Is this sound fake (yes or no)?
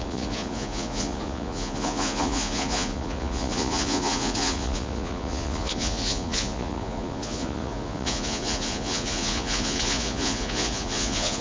yes